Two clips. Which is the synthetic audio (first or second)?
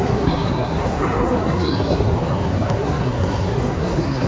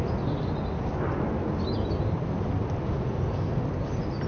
first